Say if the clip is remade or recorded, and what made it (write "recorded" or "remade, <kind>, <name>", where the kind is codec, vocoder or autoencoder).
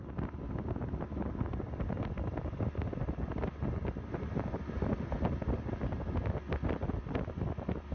recorded